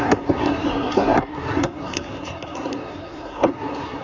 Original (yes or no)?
no